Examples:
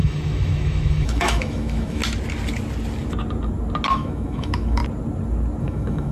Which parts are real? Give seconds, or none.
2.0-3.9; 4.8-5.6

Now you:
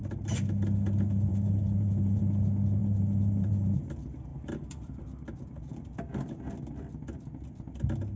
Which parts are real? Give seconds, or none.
0.0-1.3; 2.2-2.8; 3.8-4.3; 5.0-8.2

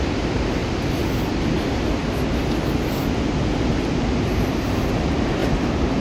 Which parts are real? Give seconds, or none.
0.6-4.2

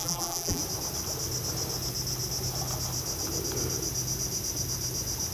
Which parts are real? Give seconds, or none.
0.6-5.3

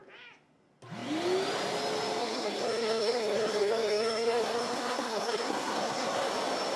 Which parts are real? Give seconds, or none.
0.0-2.2; 6.3-6.8

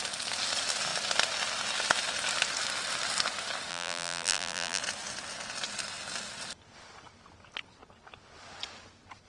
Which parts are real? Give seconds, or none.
0.0-3.7; 4.8-9.3

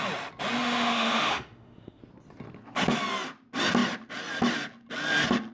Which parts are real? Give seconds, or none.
0.0-0.6; 2.0-5.5

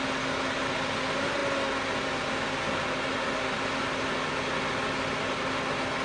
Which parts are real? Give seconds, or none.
0.0-6.0